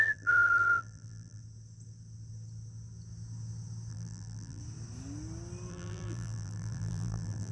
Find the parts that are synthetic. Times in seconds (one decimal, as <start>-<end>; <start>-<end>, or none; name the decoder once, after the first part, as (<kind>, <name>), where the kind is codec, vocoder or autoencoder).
0.0-1.4 (vocoder, BigVGAN v2); 3.9-4.6; 5.7-7.5